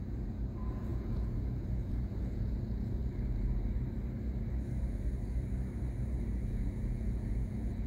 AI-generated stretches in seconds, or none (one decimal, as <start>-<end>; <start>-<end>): 0.0-3.0; 6.2-7.9